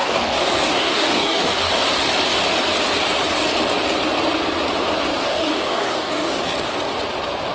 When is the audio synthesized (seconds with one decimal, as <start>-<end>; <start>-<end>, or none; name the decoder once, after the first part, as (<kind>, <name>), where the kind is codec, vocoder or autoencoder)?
0.0-1.7 (codec, DAC); 5.2-6.4